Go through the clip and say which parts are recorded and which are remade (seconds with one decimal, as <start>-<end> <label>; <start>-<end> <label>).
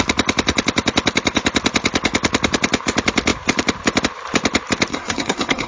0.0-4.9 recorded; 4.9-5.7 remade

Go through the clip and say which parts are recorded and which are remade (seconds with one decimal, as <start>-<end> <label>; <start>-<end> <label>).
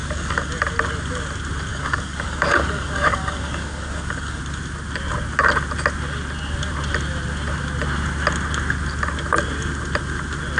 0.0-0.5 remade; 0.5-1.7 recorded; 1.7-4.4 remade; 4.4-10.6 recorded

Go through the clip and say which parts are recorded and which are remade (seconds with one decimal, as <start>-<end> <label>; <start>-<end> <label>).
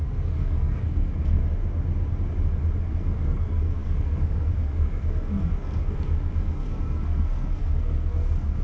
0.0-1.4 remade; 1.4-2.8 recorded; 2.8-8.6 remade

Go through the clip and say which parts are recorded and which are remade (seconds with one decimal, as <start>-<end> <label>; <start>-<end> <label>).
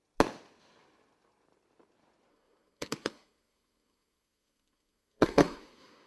0.0-2.3 recorded; 2.3-6.1 remade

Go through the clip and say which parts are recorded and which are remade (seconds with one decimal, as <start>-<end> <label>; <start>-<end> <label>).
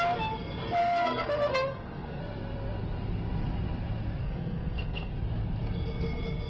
0.0-0.8 recorded; 0.8-2.2 remade; 2.2-4.2 recorded; 4.2-5.1 remade; 5.1-6.5 recorded